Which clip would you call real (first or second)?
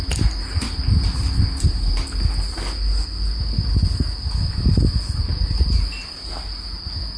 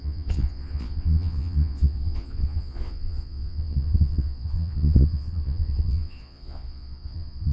first